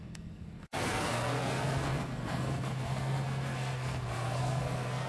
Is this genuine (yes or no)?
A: no